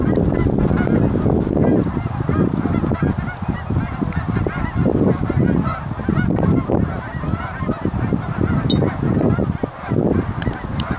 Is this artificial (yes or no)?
no